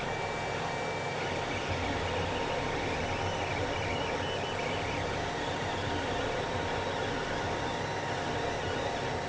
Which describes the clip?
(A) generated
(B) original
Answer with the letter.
B